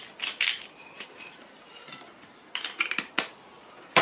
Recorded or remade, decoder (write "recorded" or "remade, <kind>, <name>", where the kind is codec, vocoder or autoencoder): recorded